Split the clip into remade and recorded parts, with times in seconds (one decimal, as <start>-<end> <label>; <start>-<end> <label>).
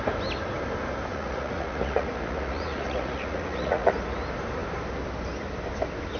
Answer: 0.0-1.1 recorded; 1.1-3.9 remade; 3.9-6.2 recorded